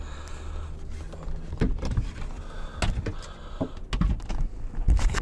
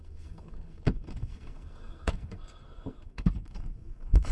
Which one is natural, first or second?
first